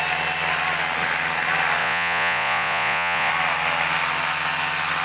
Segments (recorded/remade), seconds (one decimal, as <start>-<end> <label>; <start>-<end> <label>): 0.0-1.8 recorded; 1.8-3.3 remade; 3.3-5.0 recorded